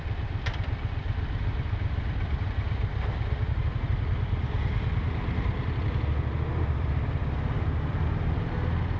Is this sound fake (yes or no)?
no